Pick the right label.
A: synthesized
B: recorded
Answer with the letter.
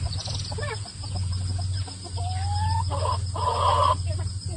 B